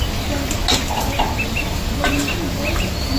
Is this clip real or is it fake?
real